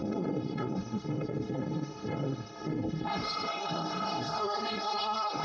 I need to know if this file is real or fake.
fake